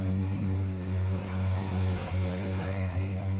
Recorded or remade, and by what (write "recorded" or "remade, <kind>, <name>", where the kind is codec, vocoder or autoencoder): remade, codec, SNAC